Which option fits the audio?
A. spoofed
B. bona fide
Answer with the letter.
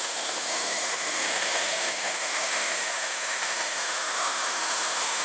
A